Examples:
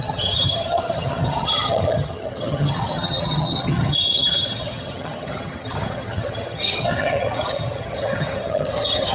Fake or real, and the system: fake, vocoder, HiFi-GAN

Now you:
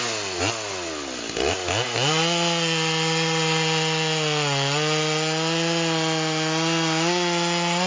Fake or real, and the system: real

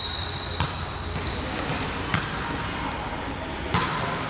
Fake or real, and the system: real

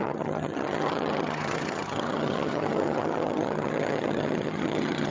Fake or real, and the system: fake, vocoder, HiFi-GAN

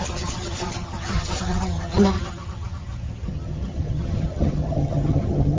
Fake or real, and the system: fake, vocoder, HiFi-GAN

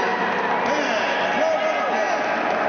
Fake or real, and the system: real